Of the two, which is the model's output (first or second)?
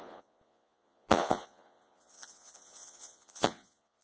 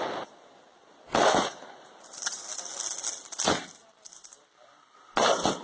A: first